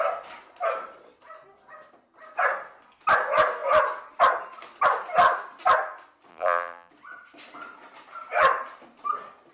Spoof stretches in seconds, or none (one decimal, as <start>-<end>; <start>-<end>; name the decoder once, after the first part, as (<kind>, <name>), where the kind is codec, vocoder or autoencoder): 6.3-6.9 (vocoder, BigVGAN v2)